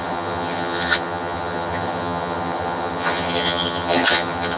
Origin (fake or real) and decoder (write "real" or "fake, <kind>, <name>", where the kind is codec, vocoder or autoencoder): fake, vocoder, HiFi-GAN